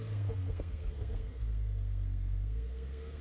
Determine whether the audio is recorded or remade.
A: remade